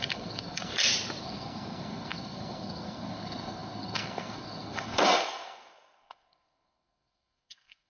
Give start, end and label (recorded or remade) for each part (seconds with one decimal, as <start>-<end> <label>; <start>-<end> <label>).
0.0-0.7 remade; 0.7-1.2 recorded; 1.2-7.9 remade